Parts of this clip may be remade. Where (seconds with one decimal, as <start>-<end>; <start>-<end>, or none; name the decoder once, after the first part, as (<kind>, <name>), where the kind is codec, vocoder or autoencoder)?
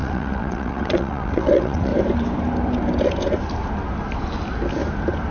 0.0-1.9 (vocoder, WaveNeXt)